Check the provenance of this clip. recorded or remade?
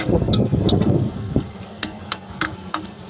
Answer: remade